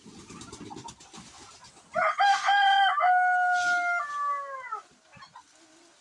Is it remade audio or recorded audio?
recorded